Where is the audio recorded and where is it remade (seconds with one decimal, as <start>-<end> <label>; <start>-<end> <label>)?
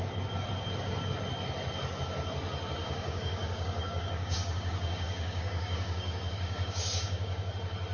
0.0-2.8 recorded; 2.8-7.5 remade; 7.5-7.9 recorded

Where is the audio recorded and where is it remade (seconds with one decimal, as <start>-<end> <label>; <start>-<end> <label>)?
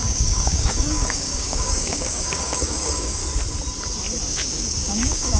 0.0-3.2 remade; 3.2-4.3 recorded; 4.3-5.4 remade